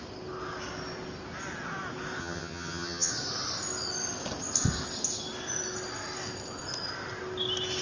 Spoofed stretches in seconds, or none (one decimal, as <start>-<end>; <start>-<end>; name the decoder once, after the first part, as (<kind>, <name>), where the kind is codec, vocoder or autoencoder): 2.2-3.1 (vocoder, HiFi-GAN)